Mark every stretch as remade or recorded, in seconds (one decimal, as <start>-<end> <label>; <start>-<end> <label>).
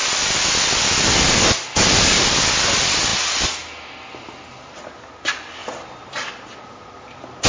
0.0-0.8 remade; 0.8-5.6 recorded; 5.6-7.5 remade